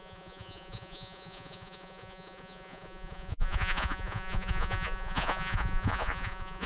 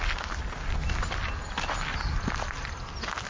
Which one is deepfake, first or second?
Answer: first